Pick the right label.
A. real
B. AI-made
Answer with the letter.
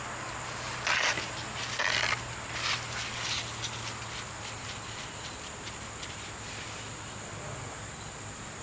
A